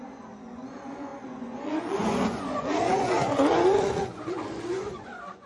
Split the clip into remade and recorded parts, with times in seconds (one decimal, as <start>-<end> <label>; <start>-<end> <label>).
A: 0.0-5.5 remade